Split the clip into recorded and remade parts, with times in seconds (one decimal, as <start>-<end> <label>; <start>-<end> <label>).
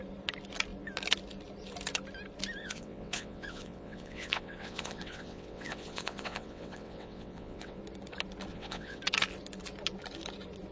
0.0-2.6 recorded; 2.6-7.8 remade; 7.8-8.5 recorded; 8.5-9.0 remade; 9.0-10.7 recorded